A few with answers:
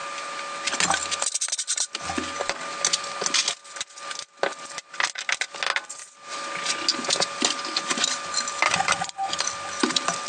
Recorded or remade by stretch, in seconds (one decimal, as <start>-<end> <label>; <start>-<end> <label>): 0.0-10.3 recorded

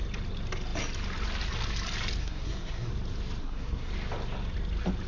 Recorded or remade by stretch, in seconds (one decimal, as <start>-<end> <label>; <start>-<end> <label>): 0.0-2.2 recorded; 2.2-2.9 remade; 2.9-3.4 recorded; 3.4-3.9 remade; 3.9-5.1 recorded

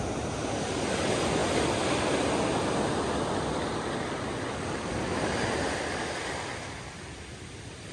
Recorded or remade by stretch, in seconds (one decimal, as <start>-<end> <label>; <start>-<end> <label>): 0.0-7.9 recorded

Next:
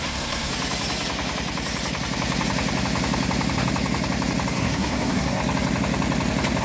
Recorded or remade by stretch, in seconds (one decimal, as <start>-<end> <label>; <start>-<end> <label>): 0.0-0.5 remade; 0.5-4.5 recorded; 4.5-5.4 remade; 5.4-6.6 recorded